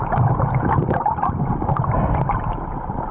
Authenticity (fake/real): real